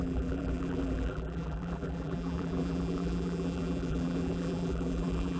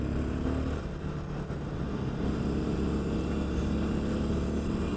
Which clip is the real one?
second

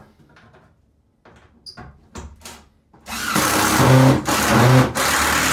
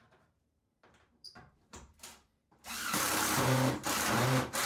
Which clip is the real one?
first